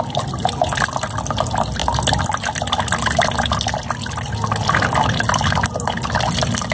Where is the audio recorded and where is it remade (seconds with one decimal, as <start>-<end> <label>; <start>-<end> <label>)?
0.0-6.7 recorded